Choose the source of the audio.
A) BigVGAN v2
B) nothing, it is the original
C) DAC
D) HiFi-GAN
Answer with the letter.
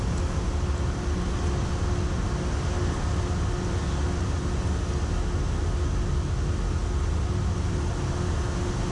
B